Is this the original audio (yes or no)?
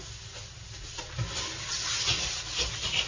yes